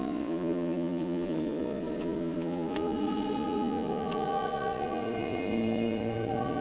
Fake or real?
fake